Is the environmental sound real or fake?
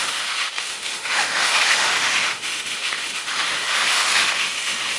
fake